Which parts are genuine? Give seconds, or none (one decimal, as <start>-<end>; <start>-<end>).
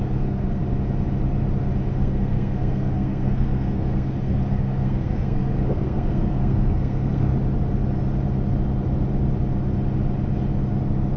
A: 0.6-1.9; 7.3-11.2